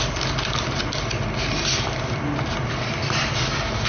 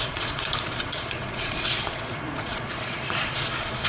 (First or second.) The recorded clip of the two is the first